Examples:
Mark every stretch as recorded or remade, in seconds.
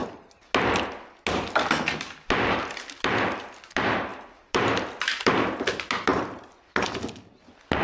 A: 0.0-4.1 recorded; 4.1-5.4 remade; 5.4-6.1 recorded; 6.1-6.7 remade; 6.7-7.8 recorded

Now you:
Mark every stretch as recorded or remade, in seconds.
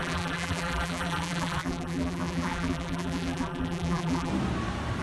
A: 0.0-4.3 remade; 4.3-5.0 recorded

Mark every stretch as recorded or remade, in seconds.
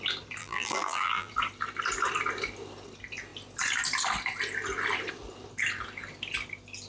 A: 0.0-0.4 recorded; 0.4-1.3 remade; 1.3-6.9 recorded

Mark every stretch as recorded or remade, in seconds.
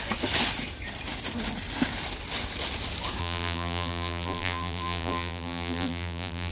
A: 0.0-3.2 recorded; 3.2-6.5 remade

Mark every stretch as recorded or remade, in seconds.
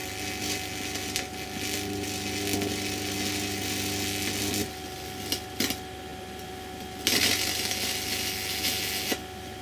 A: 0.0-9.6 recorded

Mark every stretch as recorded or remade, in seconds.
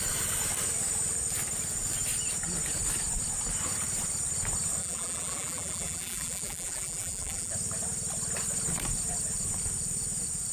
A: 0.0-4.8 recorded; 4.8-7.5 remade; 7.5-10.5 recorded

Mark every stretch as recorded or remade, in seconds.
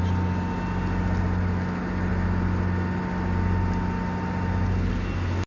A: 0.0-5.5 recorded